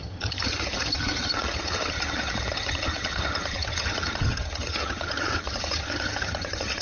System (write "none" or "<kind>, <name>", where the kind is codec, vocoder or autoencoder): vocoder, HiFi-GAN